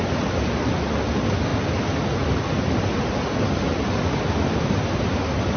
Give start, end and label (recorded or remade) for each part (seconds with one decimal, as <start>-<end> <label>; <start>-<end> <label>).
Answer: 0.0-5.6 recorded